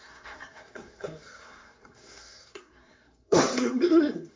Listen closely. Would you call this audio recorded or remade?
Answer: remade